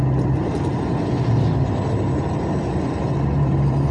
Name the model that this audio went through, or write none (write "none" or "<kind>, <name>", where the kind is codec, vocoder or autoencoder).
none